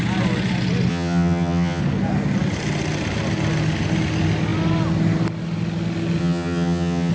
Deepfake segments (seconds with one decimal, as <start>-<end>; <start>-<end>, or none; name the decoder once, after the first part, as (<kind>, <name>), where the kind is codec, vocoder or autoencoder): 0.9-1.8 (vocoder, HiFi-GAN); 6.2-7.1